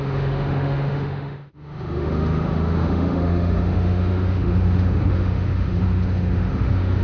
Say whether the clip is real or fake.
fake